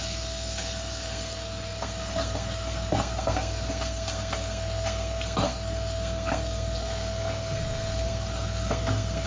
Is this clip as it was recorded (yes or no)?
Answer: no